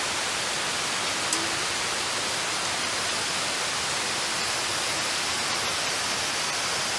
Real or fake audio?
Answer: real